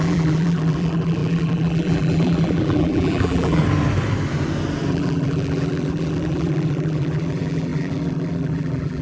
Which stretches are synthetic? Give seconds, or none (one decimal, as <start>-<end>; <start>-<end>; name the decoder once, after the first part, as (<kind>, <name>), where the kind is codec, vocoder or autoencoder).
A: 0.0-3.6 (vocoder, BigVGAN v2); 4.9-9.0